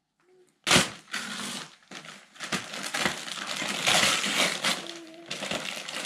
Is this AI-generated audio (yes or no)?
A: no